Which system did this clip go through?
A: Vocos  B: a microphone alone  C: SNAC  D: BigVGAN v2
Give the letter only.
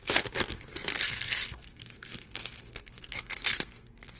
C